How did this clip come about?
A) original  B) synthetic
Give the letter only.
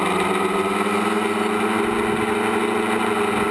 A